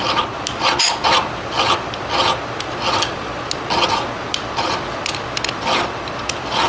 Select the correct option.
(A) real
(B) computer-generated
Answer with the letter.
A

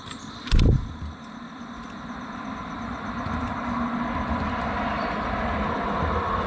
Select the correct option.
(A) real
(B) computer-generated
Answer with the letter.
A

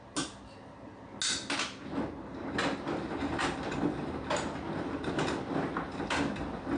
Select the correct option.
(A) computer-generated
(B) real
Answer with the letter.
B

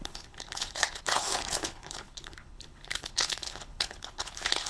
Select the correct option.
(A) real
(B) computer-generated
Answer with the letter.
B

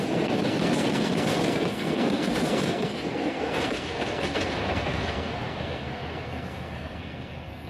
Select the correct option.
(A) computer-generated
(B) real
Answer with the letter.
A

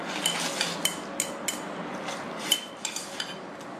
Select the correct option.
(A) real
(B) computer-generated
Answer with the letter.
A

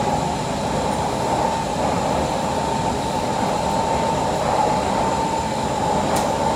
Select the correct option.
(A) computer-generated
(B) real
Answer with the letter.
B